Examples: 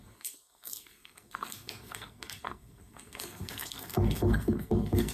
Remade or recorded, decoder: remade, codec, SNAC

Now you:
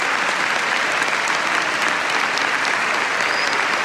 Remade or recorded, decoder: recorded